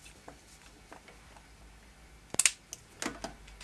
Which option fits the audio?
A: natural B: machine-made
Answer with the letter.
A